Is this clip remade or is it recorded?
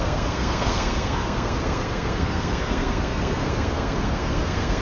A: remade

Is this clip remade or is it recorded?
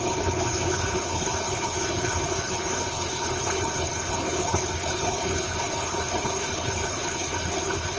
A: remade